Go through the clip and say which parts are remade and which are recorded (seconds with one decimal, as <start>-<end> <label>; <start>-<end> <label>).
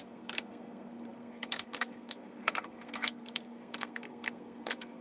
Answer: 0.0-5.0 remade